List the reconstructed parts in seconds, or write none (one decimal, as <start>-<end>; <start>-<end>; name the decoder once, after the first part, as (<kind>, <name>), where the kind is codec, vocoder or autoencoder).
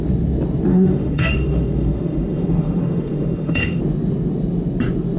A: 0.7-3.8 (autoencoder, DAC-VAE)